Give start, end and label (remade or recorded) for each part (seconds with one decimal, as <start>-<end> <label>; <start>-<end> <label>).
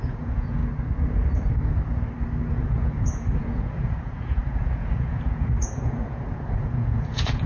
0.0-0.6 remade; 0.6-2.5 recorded; 2.5-7.5 remade